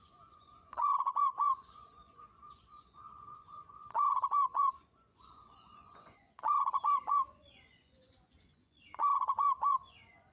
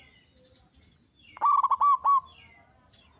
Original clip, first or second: second